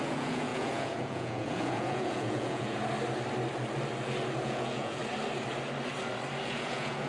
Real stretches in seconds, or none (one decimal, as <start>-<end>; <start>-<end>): 2.8-4.4; 5.0-6.4